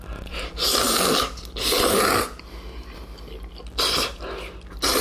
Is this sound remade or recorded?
recorded